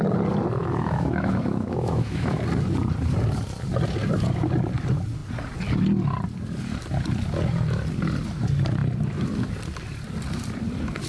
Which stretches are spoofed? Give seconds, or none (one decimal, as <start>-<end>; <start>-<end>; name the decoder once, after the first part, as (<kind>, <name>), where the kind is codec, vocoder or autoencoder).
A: 0.6-2.4 (autoencoder, DAC-VAE)